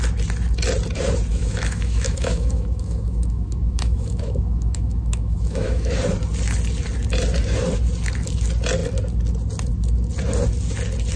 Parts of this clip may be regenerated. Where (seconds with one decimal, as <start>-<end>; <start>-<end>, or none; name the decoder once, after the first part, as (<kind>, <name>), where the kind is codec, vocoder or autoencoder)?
1.3-5.9 (autoencoder, DAC-VAE)